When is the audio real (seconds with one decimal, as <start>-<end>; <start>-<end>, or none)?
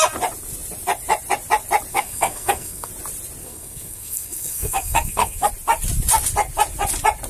0.0-1.9; 2.9-3.4; 5.5-7.3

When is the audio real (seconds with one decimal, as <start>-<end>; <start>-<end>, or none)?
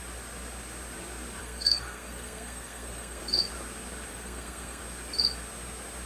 0.0-1.4; 3.2-4.1; 4.8-6.1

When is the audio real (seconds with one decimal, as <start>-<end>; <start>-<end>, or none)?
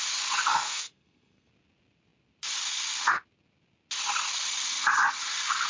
0.0-0.5; 1.5-5.7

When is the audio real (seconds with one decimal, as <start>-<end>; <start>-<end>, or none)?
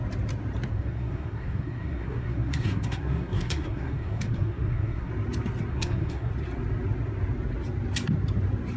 0.0-0.7; 5.1-5.7; 6.3-8.8